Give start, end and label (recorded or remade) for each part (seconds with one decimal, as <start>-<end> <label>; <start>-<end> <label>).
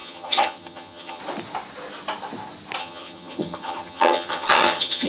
0.0-1.2 remade; 1.2-2.8 recorded; 2.8-5.1 remade